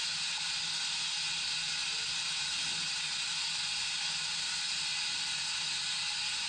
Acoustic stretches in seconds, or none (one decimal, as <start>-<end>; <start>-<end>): 0.0-6.5